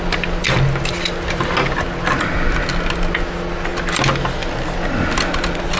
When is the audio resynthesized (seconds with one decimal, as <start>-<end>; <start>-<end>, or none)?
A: none